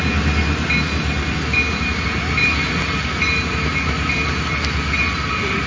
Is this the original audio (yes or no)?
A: yes